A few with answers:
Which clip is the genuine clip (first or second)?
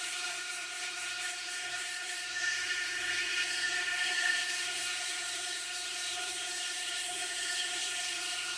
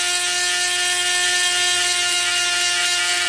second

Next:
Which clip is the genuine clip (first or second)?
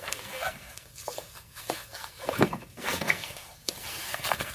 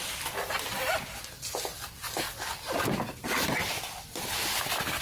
second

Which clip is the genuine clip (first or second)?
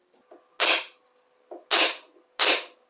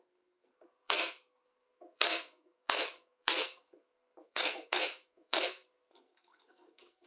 first